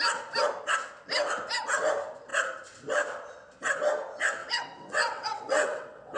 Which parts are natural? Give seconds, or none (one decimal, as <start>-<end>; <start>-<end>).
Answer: 0.0-4.4